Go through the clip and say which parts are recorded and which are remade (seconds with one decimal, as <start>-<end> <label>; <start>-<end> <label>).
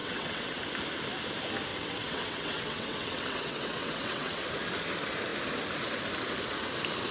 0.0-0.6 remade; 0.6-1.7 recorded; 1.7-4.4 remade; 4.4-7.1 recorded